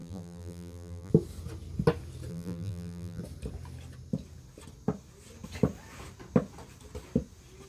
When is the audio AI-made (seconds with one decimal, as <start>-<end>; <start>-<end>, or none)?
0.0-1.1; 2.3-3.2